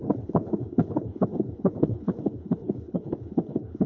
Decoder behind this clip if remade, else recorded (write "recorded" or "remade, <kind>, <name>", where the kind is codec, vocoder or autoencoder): remade, codec, HILCodec